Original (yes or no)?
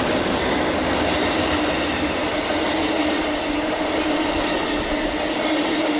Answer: yes